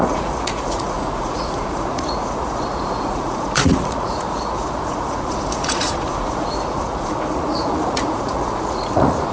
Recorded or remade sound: remade